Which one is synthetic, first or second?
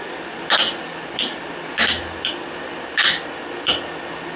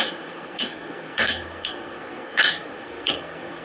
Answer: second